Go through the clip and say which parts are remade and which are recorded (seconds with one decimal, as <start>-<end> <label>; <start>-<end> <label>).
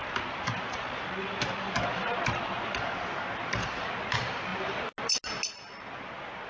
0.0-6.5 recorded